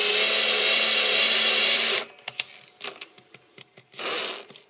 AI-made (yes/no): no